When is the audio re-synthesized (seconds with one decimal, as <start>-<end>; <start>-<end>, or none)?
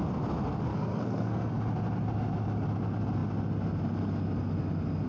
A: 0.7-1.5